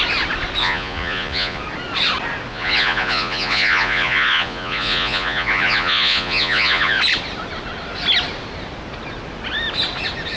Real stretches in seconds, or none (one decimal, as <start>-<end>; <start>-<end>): 0.0-0.6; 1.6-2.5; 7.0-10.4

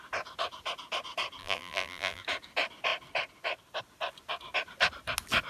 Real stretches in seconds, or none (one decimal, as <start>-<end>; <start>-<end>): 0.0-1.4; 2.2-5.5

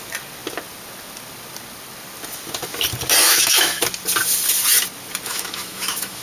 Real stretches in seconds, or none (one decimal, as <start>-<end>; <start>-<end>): 0.0-3.2; 3.8-5.3

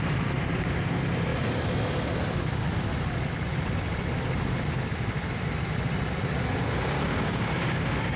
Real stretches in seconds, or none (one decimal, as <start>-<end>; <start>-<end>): 0.0-7.1

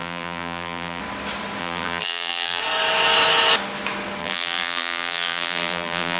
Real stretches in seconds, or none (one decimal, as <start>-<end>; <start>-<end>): 1.0-1.6; 2.6-4.2

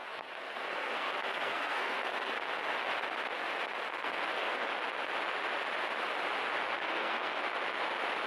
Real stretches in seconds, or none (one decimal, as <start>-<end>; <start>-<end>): 2.3-3.9; 4.7-6.8; 7.4-8.3

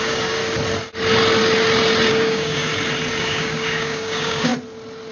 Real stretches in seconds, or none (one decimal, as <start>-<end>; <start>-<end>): 0.4-2.1; 2.7-3.2; 4.5-5.1